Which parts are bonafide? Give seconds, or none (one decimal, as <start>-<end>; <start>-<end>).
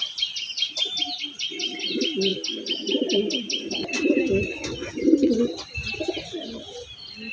0.0-7.3